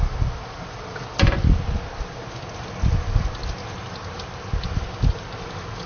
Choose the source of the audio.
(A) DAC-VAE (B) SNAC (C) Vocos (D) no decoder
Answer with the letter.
D